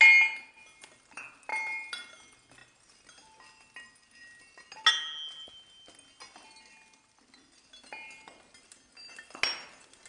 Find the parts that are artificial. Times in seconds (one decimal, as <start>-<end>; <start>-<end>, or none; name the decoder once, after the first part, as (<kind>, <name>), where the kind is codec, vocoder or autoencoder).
none